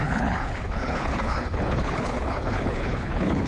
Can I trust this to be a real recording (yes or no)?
no